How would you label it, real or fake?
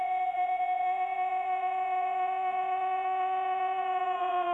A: fake